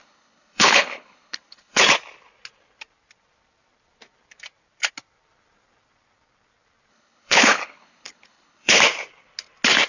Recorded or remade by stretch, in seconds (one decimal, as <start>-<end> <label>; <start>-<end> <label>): 0.0-1.8 remade; 1.8-6.9 recorded; 6.9-8.8 remade; 8.8-9.9 recorded